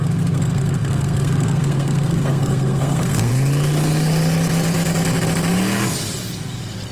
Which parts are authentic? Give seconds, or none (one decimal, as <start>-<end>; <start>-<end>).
3.3-6.9